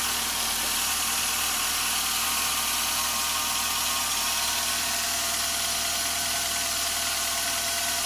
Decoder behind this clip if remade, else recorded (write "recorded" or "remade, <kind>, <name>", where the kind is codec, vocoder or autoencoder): recorded